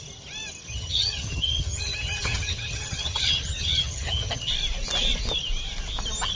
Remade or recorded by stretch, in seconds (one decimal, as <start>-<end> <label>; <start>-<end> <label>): 0.0-0.7 recorded; 0.7-4.5 remade; 4.5-6.3 recorded